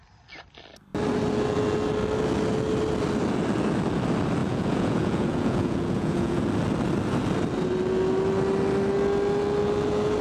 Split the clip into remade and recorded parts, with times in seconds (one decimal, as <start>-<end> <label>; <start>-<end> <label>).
0.0-4.4 recorded; 4.4-6.4 remade; 6.4-10.2 recorded